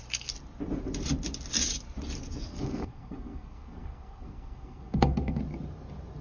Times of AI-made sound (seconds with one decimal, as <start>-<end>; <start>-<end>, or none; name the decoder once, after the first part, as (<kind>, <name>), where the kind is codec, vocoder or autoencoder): 2.5-5.4 (codec, SNAC)